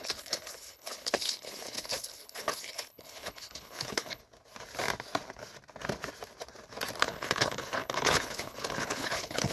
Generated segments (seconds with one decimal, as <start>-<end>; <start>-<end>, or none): 0.0-4.2; 7.0-9.5